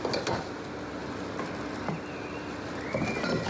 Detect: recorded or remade recorded